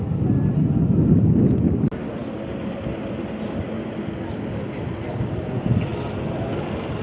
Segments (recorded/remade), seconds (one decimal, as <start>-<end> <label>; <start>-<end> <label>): 0.0-7.0 recorded